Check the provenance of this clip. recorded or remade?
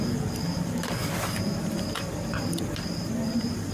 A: recorded